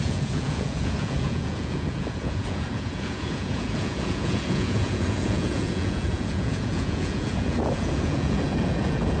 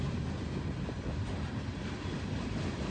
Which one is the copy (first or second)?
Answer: first